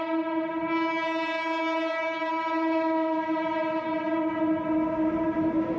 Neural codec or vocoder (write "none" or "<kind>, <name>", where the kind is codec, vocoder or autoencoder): none